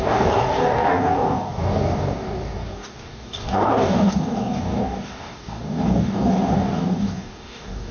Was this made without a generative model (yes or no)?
no